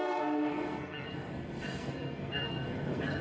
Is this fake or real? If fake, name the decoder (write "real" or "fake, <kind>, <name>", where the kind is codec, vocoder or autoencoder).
fake, codec, SNAC